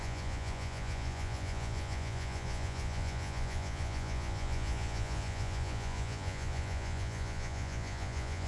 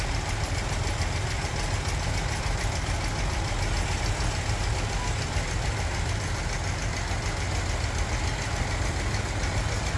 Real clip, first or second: second